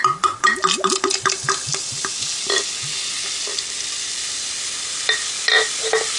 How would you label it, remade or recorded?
recorded